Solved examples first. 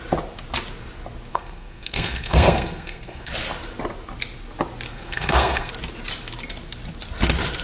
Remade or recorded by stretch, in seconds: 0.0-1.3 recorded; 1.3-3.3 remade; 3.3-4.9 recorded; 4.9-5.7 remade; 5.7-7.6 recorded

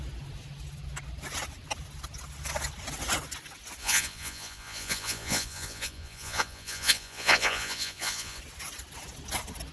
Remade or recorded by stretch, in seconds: 0.0-3.8 recorded; 3.8-8.4 remade; 8.4-9.7 recorded

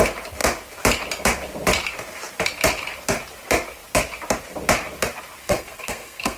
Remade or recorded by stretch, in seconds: 0.0-5.4 recorded; 5.4-6.4 remade

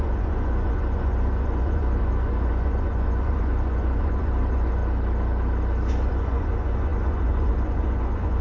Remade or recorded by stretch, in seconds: 0.0-4.8 remade; 4.8-5.9 recorded; 5.9-8.4 remade

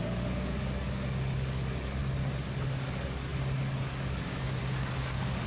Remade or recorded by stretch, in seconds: 0.0-2.0 remade; 2.0-2.6 recorded; 2.6-5.5 remade

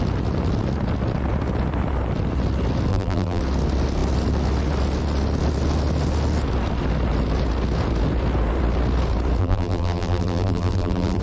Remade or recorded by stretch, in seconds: 0.0-2.9 recorded; 2.9-3.4 remade; 3.4-9.4 recorded; 9.4-11.2 remade

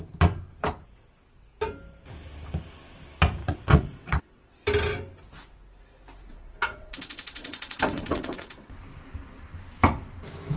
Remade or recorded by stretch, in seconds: 0.0-3.4 recorded; 3.4-4.5 remade; 4.5-6.3 recorded; 6.3-8.7 remade; 8.7-10.6 recorded

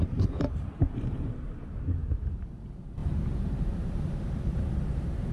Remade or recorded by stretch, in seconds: 0.0-5.3 remade